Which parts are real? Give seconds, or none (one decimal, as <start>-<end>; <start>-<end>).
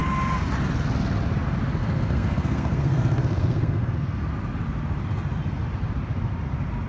0.0-1.8; 4.2-6.9